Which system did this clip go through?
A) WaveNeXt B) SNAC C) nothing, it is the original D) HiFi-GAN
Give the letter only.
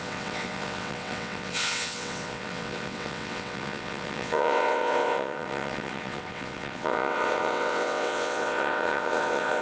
A